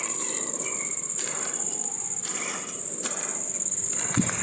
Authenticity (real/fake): real